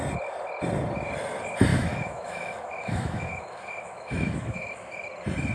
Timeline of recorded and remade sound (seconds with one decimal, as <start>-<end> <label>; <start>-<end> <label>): 0.0-1.7 recorded; 1.7-5.0 remade; 5.0-5.5 recorded